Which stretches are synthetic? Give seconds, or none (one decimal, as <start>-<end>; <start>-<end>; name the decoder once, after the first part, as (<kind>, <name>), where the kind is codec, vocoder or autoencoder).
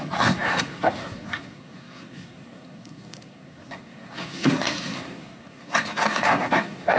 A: 0.0-7.0 (codec, SNAC)